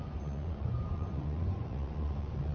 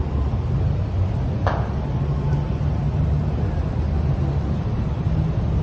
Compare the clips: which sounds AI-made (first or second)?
first